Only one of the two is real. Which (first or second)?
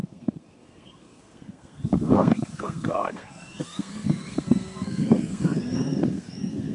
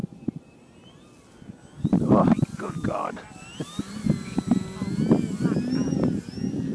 second